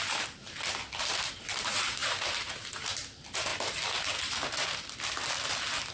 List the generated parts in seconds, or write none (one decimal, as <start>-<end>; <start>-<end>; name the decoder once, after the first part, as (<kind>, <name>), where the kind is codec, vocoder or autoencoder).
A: none